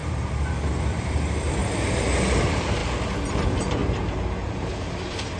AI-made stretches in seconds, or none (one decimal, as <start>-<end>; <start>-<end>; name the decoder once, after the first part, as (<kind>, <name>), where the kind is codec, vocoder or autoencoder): 0.0-1.6 (vocoder, BigVGAN v2); 2.4-2.8; 3.3-5.4